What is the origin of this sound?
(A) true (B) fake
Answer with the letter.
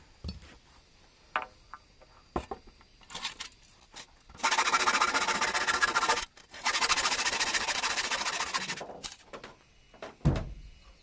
A